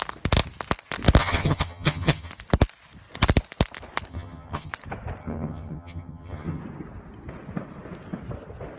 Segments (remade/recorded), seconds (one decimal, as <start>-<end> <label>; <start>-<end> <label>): 0.0-1.2 recorded; 1.2-2.3 remade; 2.3-4.1 recorded; 4.1-4.7 remade; 4.7-5.2 recorded; 5.2-6.6 remade; 6.6-8.8 recorded